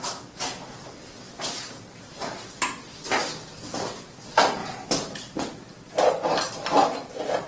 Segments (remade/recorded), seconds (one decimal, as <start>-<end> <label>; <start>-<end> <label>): 0.0-0.5 recorded; 0.5-2.6 remade; 2.6-6.8 recorded; 6.8-7.5 remade